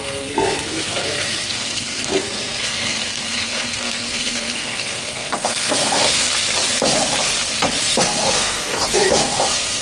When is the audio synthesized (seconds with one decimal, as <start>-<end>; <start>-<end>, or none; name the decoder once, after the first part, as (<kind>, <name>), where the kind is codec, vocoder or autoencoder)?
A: 0.0-6.2 (codec, SNAC); 7.8-9.8